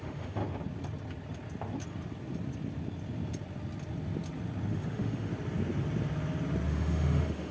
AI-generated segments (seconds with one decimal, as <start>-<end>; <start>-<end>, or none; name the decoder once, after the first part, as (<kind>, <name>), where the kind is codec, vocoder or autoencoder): 0.0-0.4 (autoencoder, DAC-VAE); 4.7-5.3; 6.7-7.5